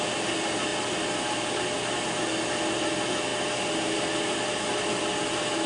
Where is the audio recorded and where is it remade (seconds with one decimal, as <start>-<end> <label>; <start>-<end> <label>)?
0.0-5.7 recorded